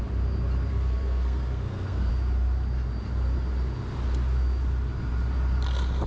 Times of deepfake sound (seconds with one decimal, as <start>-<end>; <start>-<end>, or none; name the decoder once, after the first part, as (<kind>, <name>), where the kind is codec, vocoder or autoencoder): 0.7-2.1 (codec, SNAC)